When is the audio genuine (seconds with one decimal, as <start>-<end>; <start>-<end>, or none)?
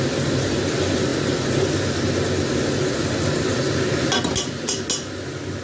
0.0-5.6